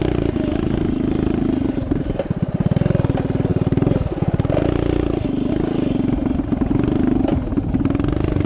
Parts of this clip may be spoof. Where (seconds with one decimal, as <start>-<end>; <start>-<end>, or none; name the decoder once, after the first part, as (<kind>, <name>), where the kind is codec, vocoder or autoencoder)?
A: none